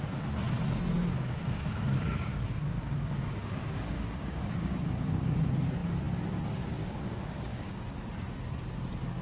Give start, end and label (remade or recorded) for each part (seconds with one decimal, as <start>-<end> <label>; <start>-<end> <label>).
0.0-1.2 recorded; 1.2-5.3 remade; 5.3-6.8 recorded; 6.8-7.8 remade; 7.8-9.2 recorded